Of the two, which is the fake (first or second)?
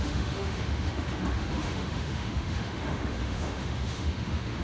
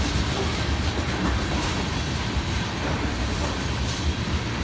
first